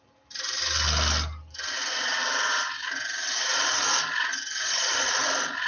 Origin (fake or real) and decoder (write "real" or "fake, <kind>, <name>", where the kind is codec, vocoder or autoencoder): real